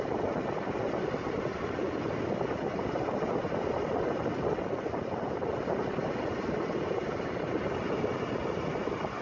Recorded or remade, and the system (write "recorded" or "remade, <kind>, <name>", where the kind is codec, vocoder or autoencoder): recorded